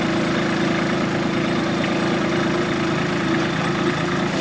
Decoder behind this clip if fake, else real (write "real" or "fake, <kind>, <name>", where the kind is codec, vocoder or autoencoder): real